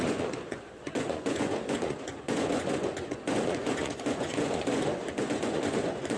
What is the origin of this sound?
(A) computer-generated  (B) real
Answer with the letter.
A